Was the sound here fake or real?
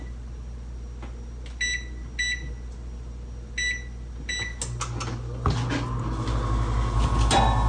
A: real